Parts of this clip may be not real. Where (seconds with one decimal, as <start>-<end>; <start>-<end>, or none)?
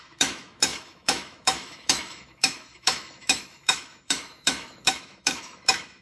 0.0-6.0